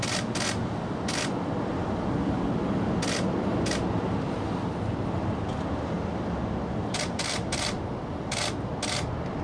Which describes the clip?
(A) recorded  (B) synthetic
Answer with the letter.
A